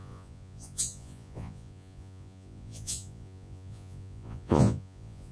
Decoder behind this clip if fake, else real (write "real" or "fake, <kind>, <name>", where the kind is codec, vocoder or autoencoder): fake, vocoder, Vocos